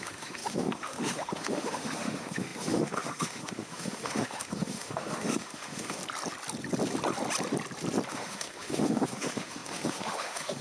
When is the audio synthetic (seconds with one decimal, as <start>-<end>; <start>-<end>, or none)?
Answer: 0.0-6.0; 8.1-10.6